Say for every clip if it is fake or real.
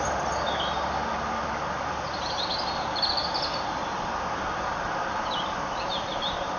real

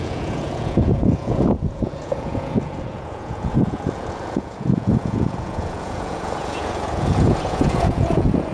fake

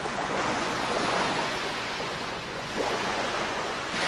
fake